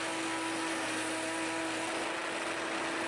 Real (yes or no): yes